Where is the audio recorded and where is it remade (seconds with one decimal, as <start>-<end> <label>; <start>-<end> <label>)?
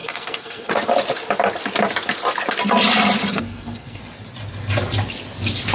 0.0-0.7 remade; 0.7-3.3 recorded; 3.3-4.0 remade; 4.0-5.7 recorded